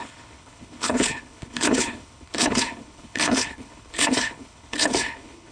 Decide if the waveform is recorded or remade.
remade